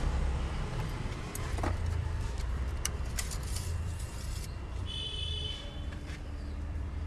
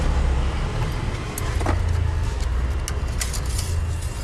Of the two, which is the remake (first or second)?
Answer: first